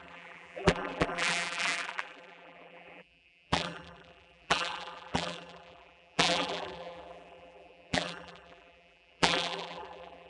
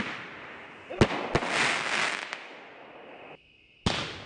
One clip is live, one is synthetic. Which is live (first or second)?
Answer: second